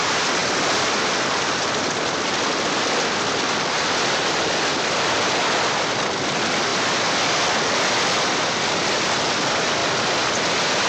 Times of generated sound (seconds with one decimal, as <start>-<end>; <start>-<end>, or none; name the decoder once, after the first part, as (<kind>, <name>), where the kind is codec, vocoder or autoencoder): none